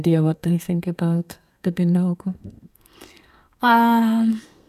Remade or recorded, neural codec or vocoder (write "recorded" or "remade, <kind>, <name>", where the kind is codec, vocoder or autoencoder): remade, codec, SNAC